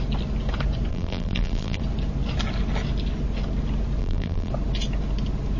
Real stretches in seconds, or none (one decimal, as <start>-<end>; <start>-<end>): 0.0-0.9; 1.8-4.0; 4.5-5.6